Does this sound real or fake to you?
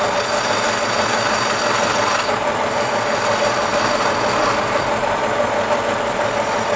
real